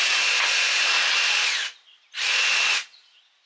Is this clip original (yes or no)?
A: yes